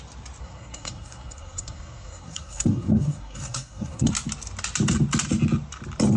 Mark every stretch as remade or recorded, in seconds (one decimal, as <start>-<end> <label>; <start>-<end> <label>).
0.0-0.4 recorded; 0.4-4.1 remade; 4.1-6.2 recorded